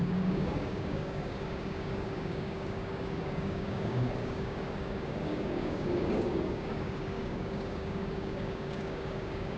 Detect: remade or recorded remade